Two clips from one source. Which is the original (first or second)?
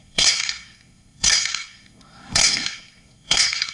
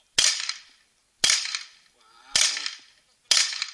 second